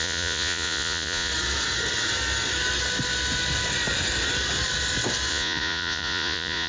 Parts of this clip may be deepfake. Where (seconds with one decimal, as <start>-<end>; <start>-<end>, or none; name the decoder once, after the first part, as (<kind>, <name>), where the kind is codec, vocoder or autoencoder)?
0.0-1.3 (vocoder, Vocos); 5.3-6.7